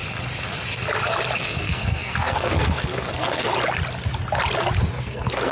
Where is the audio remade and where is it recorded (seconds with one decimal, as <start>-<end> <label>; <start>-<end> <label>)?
0.0-1.4 recorded; 1.4-3.5 remade; 3.5-5.0 recorded; 5.0-5.5 remade